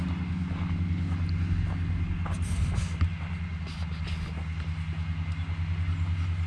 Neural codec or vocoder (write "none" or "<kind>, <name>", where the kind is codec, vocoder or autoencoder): none